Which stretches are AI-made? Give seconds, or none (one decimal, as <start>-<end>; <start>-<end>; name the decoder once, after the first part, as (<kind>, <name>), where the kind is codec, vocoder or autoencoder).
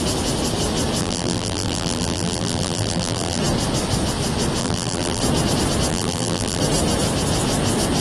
1.0-3.4 (vocoder, BigVGAN v2); 4.6-5.2; 5.9-6.6